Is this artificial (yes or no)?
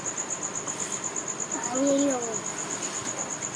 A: no